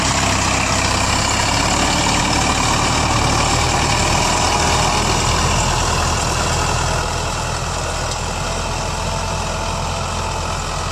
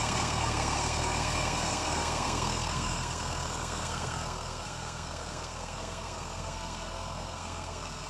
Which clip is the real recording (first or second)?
first